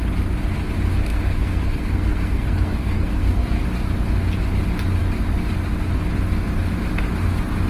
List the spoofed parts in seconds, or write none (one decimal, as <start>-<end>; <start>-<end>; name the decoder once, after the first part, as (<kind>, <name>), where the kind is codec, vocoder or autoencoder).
1.1-3.6 (codec, SNAC)